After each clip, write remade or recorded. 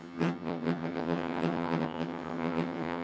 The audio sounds remade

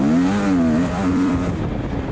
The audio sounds remade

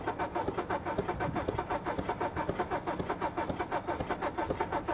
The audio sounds recorded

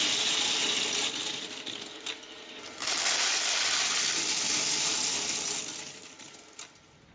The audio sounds recorded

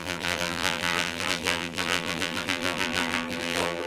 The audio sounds remade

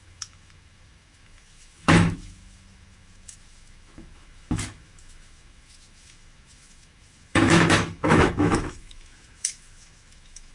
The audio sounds remade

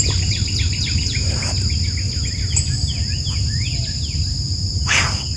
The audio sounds recorded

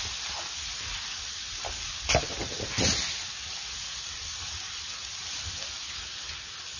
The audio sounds recorded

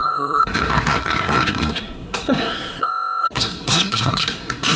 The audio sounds remade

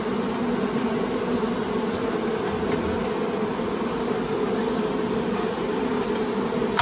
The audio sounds recorded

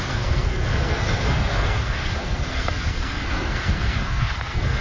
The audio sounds remade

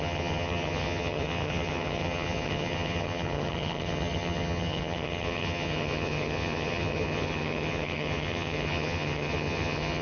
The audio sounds remade